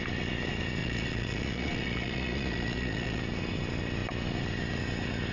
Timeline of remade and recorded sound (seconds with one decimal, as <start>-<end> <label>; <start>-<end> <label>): 0.0-0.8 recorded; 0.8-3.2 remade; 3.2-5.3 recorded